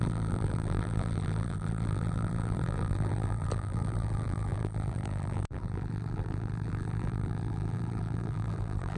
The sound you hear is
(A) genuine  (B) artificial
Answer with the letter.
B